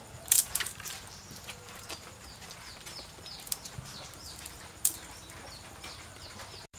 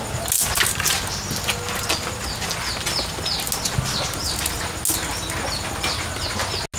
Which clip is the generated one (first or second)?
first